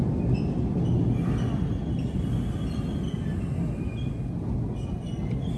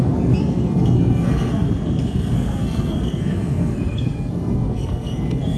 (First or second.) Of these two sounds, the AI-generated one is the second